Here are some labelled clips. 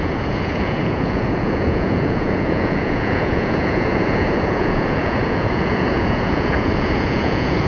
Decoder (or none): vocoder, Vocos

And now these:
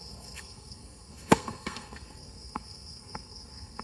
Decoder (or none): codec, SNAC